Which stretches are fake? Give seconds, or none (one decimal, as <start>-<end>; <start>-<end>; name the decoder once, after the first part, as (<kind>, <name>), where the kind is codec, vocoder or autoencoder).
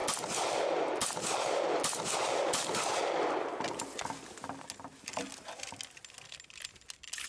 none